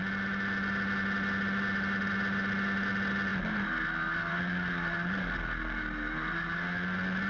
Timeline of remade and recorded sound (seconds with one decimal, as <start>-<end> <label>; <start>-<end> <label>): 0.0-7.3 recorded